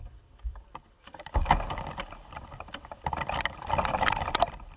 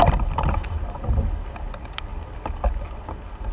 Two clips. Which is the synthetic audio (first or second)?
first